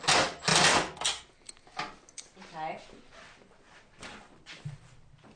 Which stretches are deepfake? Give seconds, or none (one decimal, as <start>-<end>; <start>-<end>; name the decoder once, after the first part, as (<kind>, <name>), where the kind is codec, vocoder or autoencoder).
none

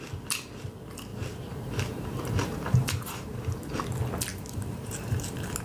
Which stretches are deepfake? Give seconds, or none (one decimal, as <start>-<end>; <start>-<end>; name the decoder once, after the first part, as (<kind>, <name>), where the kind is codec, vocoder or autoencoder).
1.1-3.7 (vocoder, BigVGAN v2); 4.3-5.6

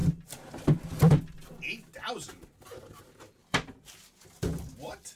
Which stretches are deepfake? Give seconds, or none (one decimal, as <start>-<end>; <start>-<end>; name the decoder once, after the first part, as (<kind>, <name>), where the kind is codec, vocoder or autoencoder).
3.4-4.0 (vocoder, BigVGAN v2)